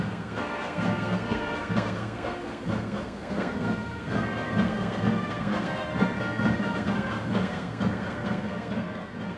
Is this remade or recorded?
remade